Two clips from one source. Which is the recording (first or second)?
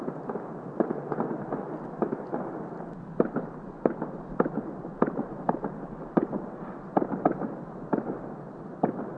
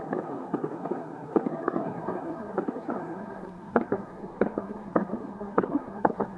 first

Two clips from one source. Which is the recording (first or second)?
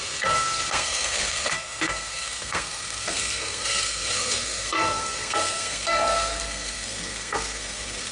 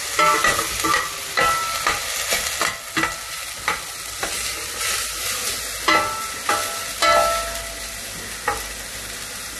second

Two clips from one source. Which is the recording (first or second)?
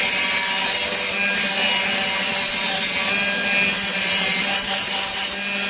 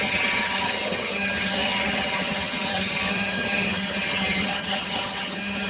first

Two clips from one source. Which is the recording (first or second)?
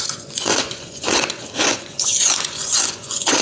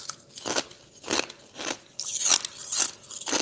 second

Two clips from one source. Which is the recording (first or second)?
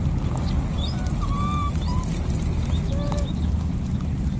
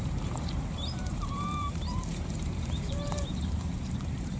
first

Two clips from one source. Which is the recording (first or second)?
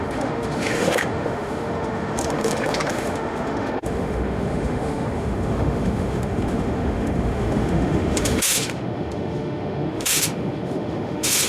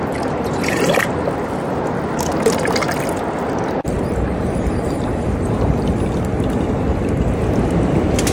second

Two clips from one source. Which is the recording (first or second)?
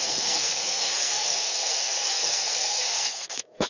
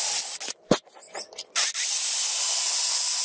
second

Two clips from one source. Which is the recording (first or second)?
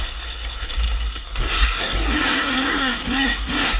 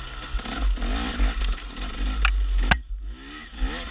second